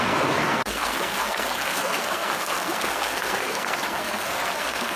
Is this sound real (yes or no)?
no